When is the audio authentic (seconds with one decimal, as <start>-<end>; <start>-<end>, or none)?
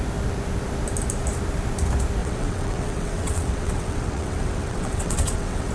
0.0-2.2